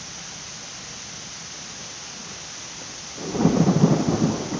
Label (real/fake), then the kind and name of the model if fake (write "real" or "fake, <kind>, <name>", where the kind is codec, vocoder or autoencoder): real